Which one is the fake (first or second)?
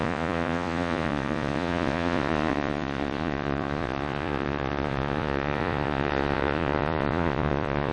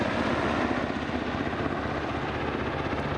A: first